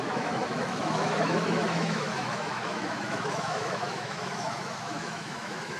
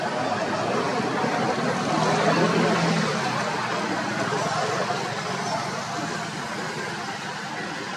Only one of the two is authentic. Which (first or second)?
second